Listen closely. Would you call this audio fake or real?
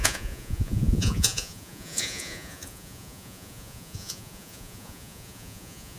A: fake